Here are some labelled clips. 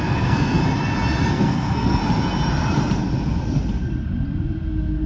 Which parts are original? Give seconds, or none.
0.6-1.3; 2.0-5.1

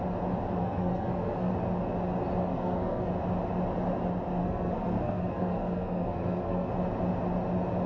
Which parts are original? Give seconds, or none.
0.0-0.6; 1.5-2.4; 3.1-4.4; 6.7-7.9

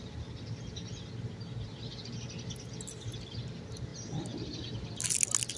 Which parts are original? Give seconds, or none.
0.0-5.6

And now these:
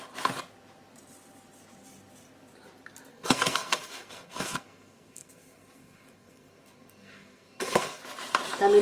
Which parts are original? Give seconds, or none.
0.0-3.1; 8.0-8.8

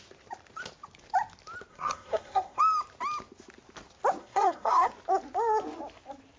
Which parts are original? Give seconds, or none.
0.0-1.7; 2.6-4.2; 4.9-6.4